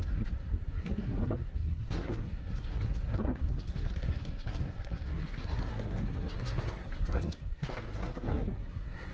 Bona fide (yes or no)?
no